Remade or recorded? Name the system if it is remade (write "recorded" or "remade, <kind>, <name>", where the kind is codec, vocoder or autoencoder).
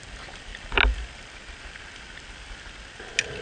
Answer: recorded